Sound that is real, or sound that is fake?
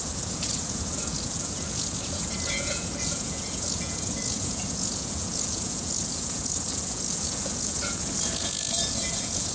fake